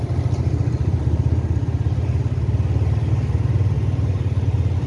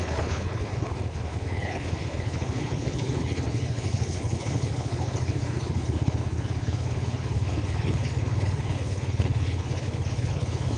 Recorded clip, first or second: first